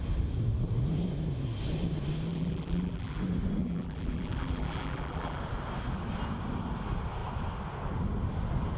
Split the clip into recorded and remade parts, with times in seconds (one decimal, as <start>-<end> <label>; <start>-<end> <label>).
0.0-2.3 recorded; 2.3-3.2 remade; 3.2-3.6 recorded; 3.6-5.4 remade; 5.4-8.8 recorded